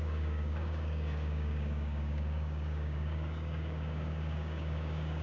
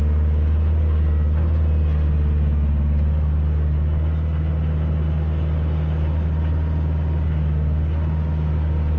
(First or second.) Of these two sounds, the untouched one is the second